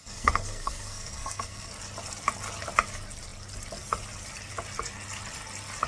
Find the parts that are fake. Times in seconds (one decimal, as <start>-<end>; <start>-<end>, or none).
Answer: 0.0-1.7